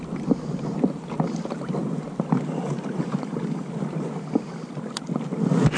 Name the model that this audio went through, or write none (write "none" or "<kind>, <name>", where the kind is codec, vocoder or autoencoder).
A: none